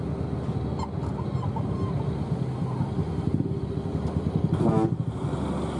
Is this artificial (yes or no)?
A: no